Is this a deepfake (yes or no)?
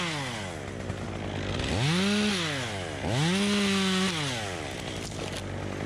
no